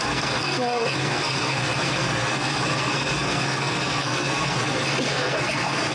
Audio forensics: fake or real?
fake